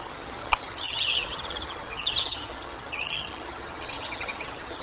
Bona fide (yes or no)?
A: no